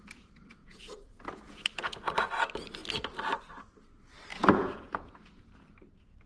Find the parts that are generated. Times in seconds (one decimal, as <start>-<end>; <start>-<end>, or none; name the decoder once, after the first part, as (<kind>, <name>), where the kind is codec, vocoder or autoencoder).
0.6-1.6 (vocoder, Vocos); 4.3-5.4